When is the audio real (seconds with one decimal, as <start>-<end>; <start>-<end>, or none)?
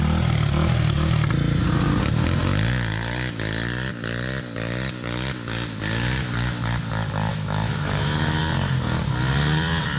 0.0-7.3; 8.4-10.0